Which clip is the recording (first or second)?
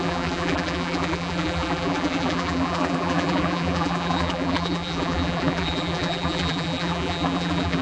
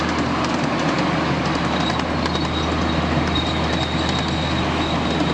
second